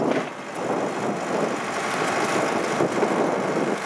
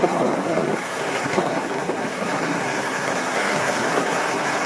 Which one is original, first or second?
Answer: first